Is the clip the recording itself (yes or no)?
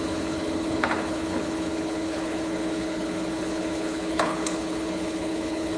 no